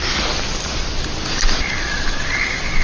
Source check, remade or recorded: recorded